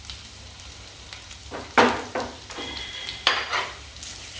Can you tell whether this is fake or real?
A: fake